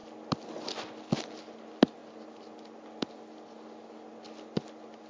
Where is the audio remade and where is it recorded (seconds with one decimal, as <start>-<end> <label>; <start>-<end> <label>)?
0.0-5.1 recorded